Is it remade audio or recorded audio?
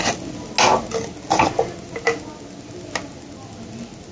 recorded